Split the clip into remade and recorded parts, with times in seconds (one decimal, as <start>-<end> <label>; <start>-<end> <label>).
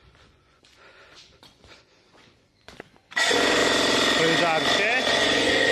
0.0-3.6 remade; 3.6-5.1 recorded; 5.1-5.7 remade